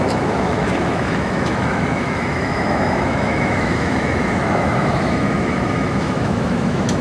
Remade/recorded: remade